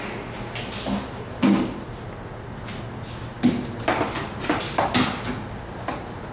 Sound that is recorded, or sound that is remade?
recorded